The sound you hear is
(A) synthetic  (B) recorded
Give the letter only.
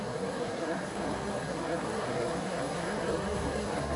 A